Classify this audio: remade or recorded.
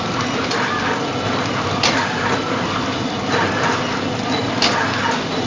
recorded